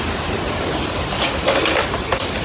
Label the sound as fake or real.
real